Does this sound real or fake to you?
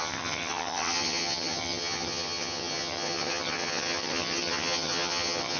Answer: fake